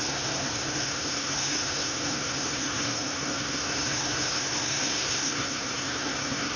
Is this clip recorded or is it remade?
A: remade